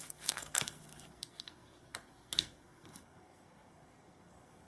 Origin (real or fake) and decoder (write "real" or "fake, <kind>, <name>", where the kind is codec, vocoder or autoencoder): fake, codec, SNAC